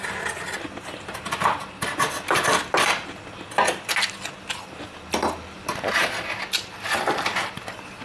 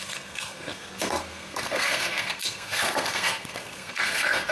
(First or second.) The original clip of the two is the first